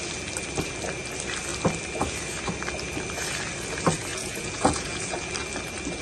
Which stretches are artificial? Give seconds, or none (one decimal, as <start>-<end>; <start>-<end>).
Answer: 4.1-5.3